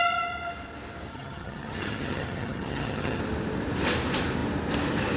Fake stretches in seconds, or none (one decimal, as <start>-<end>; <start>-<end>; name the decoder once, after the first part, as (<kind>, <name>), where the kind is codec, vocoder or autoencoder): 1.1-3.2 (vocoder, HiFi-GAN)